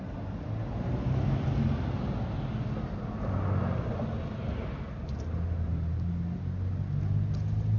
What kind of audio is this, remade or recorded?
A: recorded